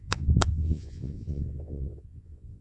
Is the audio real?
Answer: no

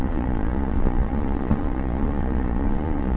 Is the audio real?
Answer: no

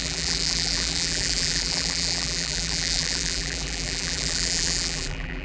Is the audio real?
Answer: no